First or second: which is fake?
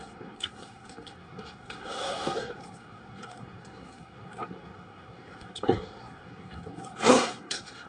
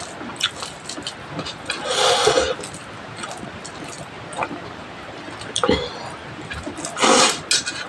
first